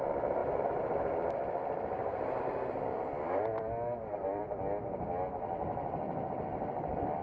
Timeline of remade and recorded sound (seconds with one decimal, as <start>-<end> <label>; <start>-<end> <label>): 0.0-4.4 remade; 4.4-6.3 recorded; 6.3-7.2 remade